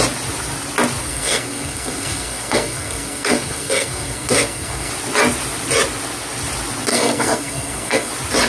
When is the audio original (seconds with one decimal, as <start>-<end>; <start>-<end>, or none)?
0.0-1.0; 4.9-6.9; 8.1-8.5